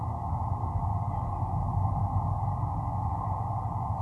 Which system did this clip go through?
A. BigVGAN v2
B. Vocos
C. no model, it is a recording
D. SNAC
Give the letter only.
C